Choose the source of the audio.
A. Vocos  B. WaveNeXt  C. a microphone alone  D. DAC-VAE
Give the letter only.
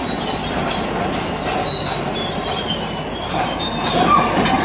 C